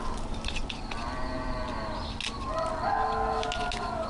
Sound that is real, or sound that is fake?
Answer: real